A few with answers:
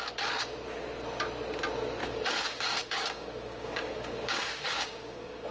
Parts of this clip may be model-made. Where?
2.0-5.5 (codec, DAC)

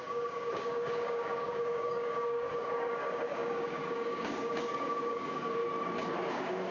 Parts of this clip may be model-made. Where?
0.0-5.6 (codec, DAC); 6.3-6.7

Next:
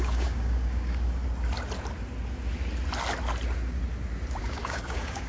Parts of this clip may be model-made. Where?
0.0-1.2 (codec, DAC); 4.4-5.3

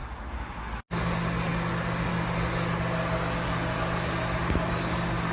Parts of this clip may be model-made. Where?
none

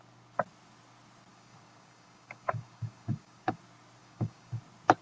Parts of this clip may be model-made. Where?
1.3-3.6 (codec, DAC); 4.0-4.6